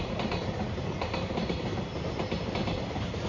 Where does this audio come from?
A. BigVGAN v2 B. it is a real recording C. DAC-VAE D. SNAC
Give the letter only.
B